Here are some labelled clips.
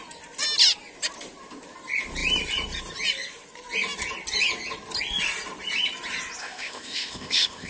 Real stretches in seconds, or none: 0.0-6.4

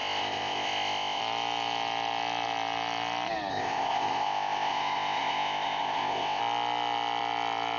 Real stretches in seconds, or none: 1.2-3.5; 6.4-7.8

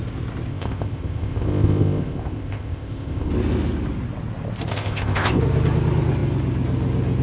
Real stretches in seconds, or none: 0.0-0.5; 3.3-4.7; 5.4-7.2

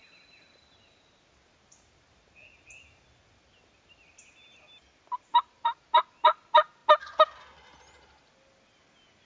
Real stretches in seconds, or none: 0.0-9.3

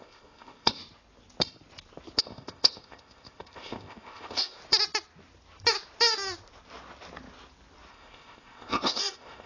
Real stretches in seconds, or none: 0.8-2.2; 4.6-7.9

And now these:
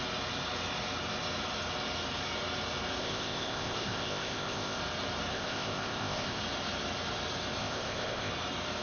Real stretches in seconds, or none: 0.0-3.0; 4.8-5.3; 6.4-7.6; 8.3-8.8